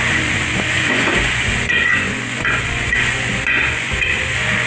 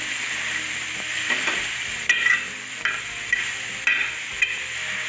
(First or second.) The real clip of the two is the second